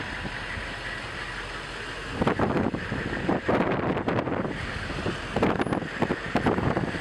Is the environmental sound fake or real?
real